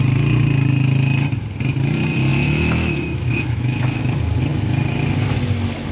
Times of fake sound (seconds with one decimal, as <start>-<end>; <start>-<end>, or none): 2.3-4.0